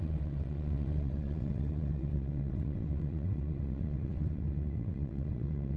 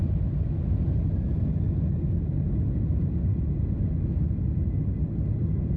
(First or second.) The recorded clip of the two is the second